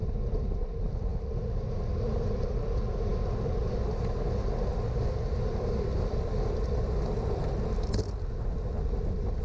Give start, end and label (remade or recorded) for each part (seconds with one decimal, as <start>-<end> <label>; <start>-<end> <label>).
0.0-9.4 recorded